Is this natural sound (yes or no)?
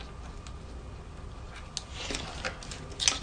yes